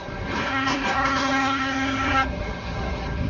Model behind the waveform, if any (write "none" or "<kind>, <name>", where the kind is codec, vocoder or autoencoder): codec, SNAC